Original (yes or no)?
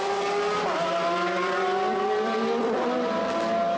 yes